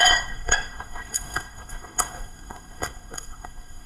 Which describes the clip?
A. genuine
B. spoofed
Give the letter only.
B